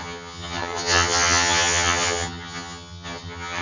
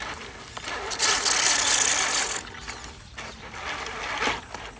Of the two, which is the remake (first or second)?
first